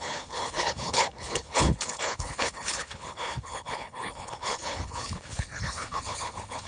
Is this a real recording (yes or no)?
no